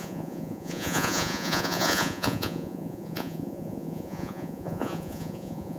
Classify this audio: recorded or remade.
remade